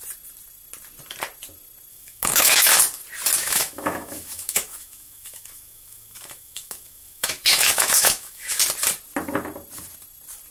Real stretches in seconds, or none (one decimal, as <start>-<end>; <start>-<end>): 0.0-1.9; 2.8-3.4; 8.6-10.5